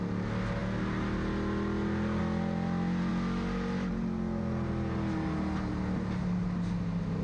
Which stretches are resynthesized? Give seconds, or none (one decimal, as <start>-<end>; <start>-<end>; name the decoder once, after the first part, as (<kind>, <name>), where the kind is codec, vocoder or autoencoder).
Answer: none